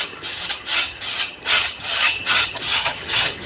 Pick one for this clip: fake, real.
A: fake